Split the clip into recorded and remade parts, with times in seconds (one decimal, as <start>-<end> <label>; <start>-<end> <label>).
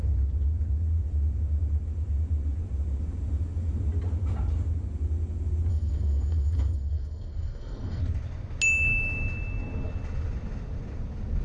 0.0-5.7 recorded; 5.7-8.0 remade; 8.0-11.4 recorded